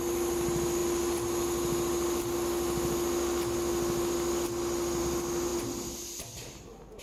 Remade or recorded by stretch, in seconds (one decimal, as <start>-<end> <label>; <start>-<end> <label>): 0.0-7.0 recorded